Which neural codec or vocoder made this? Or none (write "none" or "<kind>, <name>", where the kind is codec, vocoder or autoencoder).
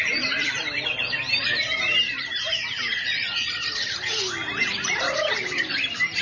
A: vocoder, BigVGAN v2